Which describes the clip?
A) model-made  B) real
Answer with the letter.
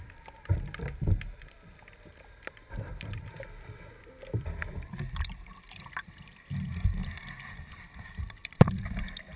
A